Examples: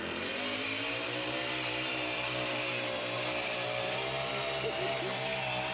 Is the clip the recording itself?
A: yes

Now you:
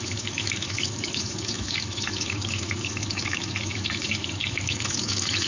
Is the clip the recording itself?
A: no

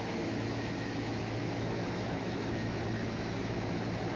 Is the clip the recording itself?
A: no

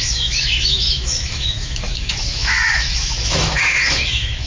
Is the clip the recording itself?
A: no